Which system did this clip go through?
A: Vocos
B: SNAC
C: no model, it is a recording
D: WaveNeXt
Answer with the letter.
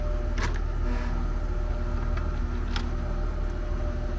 C